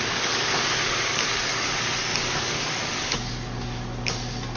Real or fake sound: fake